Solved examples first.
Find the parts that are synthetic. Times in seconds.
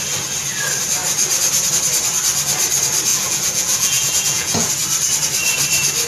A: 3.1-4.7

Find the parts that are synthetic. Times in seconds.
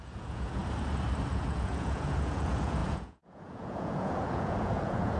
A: 0.0-0.6; 1.3-5.2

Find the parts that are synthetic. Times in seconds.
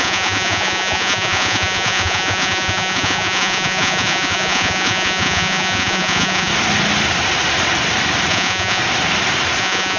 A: 0.0-6.5; 8.3-8.8; 9.6-10.0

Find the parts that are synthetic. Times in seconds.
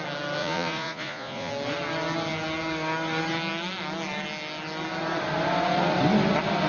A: 0.4-1.5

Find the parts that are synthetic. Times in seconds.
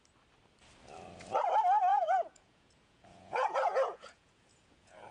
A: 1.9-5.1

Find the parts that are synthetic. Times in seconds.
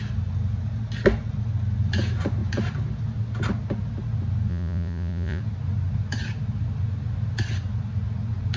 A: 4.5-5.4